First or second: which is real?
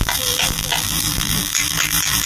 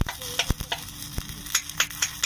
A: second